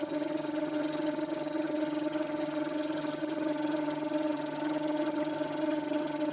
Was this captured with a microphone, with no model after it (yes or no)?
no